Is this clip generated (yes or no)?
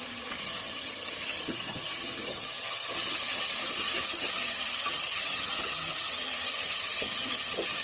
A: yes